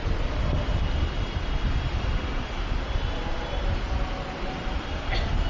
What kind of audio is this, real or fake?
real